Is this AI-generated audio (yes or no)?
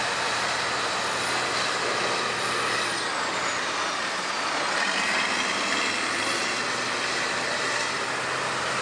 no